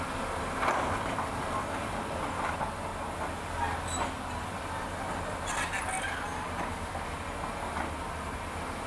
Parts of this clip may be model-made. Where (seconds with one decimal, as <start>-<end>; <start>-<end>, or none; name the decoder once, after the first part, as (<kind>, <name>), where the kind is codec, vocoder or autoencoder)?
none